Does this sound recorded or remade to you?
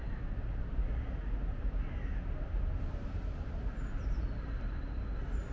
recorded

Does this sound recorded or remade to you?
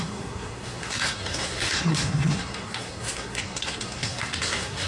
remade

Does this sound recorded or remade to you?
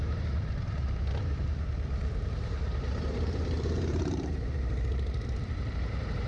remade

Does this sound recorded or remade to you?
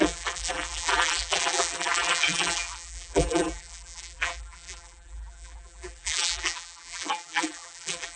remade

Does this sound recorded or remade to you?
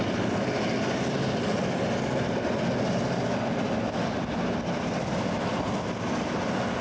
recorded